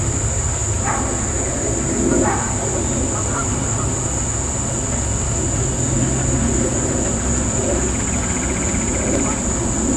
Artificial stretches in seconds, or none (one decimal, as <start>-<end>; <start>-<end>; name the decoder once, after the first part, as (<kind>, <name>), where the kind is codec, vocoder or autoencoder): none

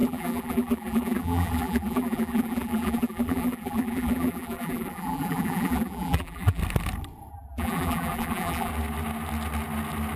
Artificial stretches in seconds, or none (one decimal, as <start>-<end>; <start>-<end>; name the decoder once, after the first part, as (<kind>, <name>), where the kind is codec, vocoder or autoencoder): 0.0-6.6 (vocoder, BigVGAN v2); 7.3-8.7

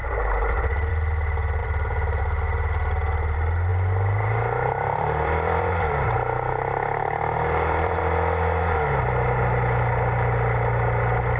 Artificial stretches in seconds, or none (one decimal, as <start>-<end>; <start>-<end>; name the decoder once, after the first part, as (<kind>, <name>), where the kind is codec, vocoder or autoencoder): 1.6-2.2 (vocoder, BigVGAN v2); 3.7-8.0

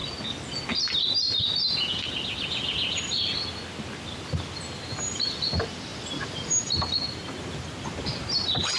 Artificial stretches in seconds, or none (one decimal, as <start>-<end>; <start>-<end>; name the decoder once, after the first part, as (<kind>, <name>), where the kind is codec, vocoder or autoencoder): none